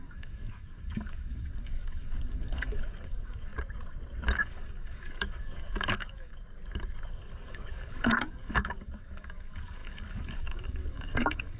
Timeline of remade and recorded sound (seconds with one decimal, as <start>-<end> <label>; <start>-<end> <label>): 0.0-3.5 remade; 3.5-4.4 recorded; 4.4-6.3 remade; 6.3-7.1 recorded; 7.1-11.6 remade